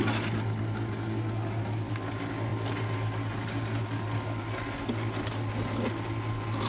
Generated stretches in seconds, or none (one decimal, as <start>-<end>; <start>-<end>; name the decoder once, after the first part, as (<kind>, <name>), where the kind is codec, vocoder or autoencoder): none